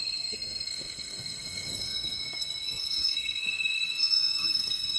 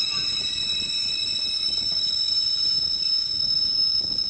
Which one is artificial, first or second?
first